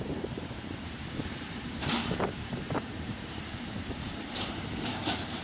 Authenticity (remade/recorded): remade